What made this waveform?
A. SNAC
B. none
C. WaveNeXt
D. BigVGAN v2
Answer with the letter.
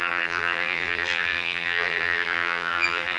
D